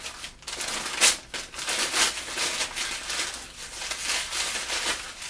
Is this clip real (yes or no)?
yes